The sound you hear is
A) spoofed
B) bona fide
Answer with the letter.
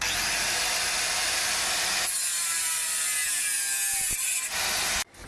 B